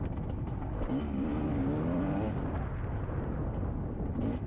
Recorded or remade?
recorded